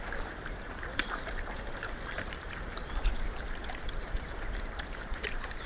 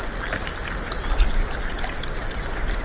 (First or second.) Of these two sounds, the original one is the second